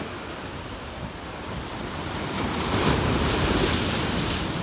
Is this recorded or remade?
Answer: recorded